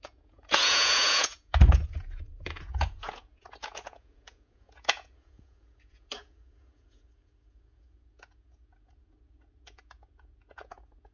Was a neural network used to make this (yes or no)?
yes